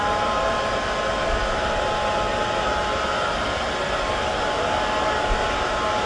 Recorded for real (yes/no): yes